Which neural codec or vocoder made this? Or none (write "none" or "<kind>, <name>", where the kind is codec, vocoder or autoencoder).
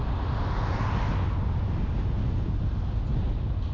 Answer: none